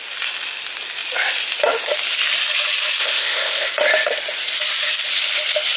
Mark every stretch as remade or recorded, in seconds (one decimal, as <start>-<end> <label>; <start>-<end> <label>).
0.0-3.0 recorded; 3.0-3.7 remade; 3.7-5.8 recorded